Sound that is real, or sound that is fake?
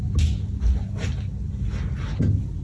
real